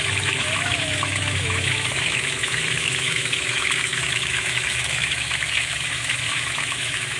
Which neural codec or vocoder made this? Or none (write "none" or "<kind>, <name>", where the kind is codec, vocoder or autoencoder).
autoencoder, DAC-VAE